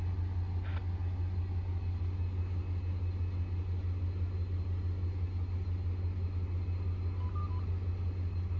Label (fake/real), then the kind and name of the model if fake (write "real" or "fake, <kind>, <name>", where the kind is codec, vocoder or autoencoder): real